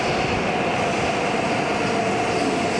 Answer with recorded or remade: recorded